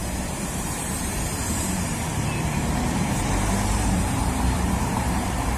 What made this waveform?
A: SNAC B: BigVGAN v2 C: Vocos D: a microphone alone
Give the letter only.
B